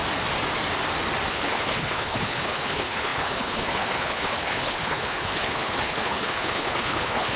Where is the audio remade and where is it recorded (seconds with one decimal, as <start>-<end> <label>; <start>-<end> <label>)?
0.0-1.3 recorded; 1.3-7.4 remade